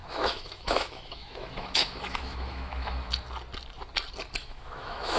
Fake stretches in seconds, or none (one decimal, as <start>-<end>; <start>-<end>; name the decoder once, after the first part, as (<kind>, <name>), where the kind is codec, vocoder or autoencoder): 0.0-3.1 (autoencoder, DAC-VAE); 4.4-5.2